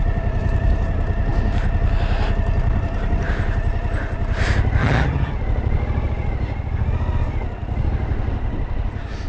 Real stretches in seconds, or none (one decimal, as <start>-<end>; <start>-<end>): 0.0-4.8; 5.3-9.3

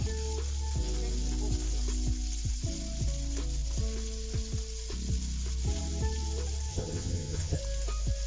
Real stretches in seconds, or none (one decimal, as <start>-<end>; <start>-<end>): 0.0-6.7; 7.6-8.3

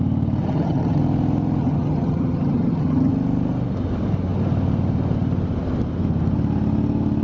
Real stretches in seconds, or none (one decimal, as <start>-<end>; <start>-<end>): 0.0-0.4; 1.0-1.6; 3.1-7.2

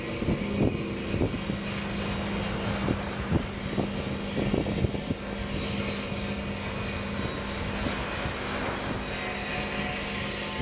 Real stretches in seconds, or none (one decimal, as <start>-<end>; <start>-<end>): 0.0-10.6

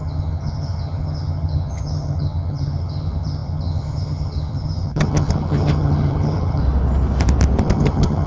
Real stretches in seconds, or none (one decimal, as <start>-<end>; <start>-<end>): 6.6-7.6